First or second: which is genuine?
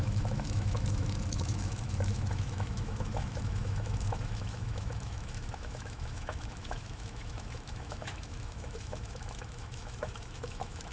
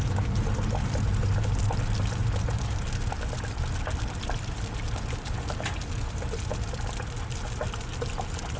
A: second